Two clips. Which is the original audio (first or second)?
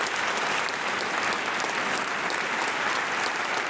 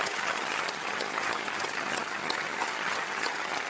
first